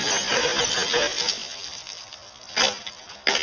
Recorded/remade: recorded